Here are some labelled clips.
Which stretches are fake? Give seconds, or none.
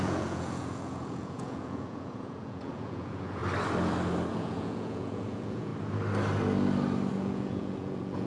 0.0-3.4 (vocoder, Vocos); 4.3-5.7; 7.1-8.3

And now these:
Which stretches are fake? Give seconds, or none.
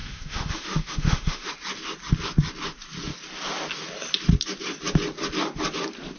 0.0-1.5 (autoencoder, DAC-VAE)